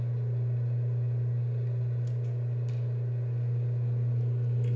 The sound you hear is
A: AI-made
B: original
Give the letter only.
B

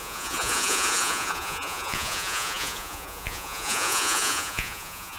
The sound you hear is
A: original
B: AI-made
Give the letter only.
B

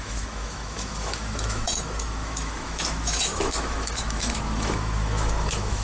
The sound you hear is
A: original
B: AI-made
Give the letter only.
B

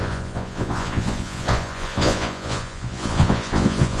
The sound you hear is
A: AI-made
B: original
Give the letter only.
A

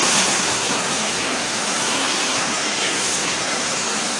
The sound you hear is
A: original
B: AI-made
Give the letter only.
B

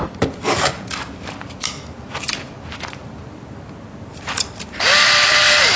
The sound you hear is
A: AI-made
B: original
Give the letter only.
A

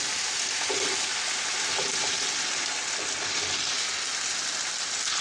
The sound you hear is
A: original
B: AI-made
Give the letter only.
A